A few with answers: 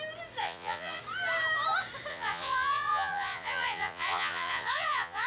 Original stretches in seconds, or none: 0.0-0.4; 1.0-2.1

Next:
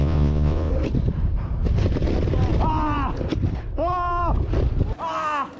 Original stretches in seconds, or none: 0.7-5.6

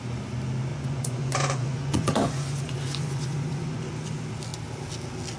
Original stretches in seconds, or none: 0.0-0.7; 3.9-5.4

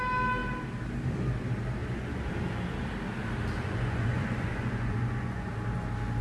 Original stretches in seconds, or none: 0.0-1.8; 2.3-3.6; 5.5-6.2